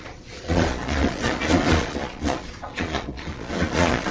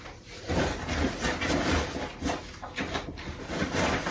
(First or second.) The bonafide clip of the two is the second